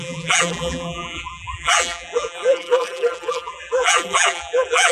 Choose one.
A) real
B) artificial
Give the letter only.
B